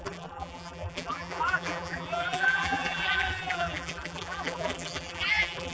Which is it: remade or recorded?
remade